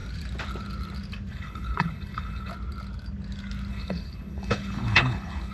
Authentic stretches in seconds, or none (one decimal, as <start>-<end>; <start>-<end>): 0.0-1.3; 2.5-3.7